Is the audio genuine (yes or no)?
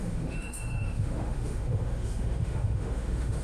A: no